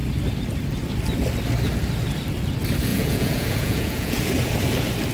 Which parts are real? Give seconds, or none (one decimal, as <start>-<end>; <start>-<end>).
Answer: 0.0-2.9; 4.3-5.1